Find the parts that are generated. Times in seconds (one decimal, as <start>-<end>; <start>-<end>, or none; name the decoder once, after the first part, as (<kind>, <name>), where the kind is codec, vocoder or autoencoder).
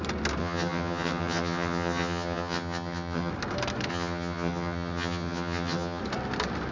0.4-3.3 (vocoder, HiFi-GAN); 3.9-6.0